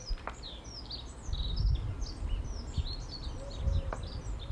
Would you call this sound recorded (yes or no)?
yes